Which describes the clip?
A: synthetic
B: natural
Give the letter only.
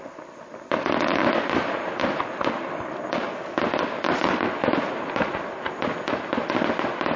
B